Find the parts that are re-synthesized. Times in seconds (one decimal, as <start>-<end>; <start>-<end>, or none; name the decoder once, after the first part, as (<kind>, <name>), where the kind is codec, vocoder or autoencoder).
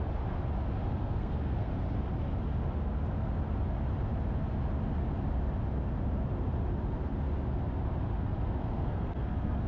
1.0-1.7 (codec, SNAC); 8.6-9.7